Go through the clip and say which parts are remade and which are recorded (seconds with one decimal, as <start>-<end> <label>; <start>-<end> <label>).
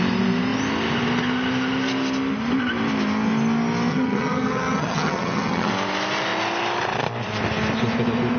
0.0-3.9 recorded; 3.9-5.7 remade; 5.7-8.4 recorded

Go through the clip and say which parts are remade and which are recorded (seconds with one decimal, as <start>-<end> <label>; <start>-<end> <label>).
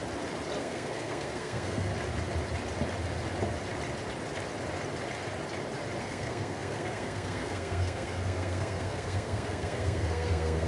0.0-0.6 recorded; 0.6-1.9 remade; 1.9-6.0 recorded; 6.0-10.7 remade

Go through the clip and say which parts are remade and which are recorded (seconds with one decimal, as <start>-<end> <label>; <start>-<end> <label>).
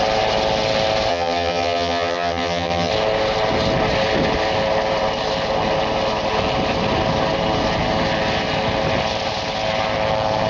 0.0-1.1 recorded; 1.1-2.9 remade; 2.9-10.5 recorded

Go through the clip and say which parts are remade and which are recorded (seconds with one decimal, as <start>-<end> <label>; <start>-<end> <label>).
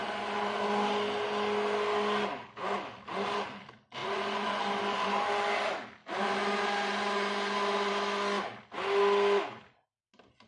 0.0-4.0 recorded; 4.0-4.6 remade; 4.6-10.5 recorded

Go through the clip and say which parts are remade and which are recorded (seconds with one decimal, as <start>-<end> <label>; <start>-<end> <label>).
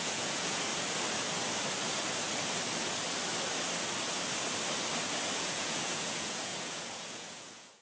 0.0-0.7 remade; 0.7-5.4 recorded; 5.4-7.8 remade